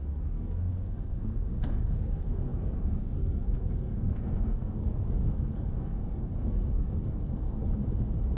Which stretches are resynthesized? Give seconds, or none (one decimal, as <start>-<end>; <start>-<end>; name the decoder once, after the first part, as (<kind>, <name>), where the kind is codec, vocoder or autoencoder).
0.0-7.6 (codec, SNAC)

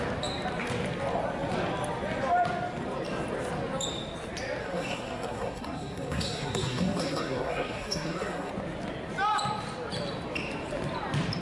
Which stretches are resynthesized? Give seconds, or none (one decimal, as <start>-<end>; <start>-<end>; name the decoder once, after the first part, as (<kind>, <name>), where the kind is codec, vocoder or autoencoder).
4.6-8.5 (codec, SNAC)

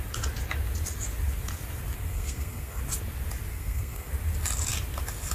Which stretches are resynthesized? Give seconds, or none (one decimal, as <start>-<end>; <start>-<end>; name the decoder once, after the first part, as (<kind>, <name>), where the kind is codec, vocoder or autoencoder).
2.1-2.8 (codec, SNAC); 3.5-4.1

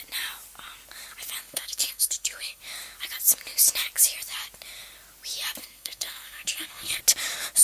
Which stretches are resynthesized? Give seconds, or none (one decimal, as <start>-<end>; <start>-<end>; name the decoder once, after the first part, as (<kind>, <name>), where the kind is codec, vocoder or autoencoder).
1.4-2.6 (codec, SNAC); 5.6-7.0

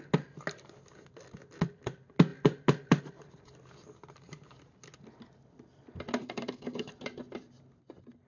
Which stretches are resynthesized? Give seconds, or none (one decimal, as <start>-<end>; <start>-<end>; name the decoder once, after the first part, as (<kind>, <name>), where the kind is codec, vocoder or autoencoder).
6.2-6.9 (codec, SNAC)

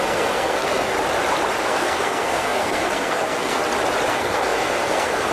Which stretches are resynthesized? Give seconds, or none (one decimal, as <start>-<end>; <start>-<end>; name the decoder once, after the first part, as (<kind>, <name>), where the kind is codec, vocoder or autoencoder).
0.0-0.9 (codec, SNAC); 1.6-3.6; 4.1-5.3

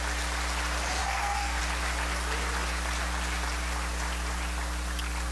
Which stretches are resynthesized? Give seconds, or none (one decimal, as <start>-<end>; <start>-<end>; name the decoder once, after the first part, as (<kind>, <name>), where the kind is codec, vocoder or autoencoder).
1.0-1.6 (codec, SNAC)